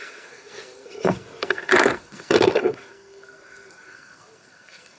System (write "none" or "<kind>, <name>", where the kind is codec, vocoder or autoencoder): codec, SNAC